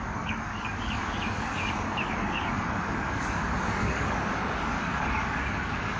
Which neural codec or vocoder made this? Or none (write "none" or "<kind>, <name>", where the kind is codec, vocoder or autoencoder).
codec, DAC